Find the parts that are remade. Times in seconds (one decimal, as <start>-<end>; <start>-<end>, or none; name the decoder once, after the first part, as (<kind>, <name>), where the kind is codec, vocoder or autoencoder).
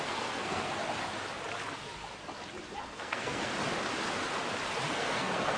0.0-0.8 (codec, SNAC); 2.8-3.5; 4.9-5.6